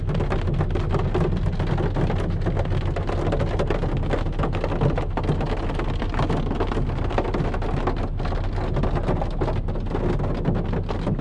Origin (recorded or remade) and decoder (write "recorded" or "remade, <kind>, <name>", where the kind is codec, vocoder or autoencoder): recorded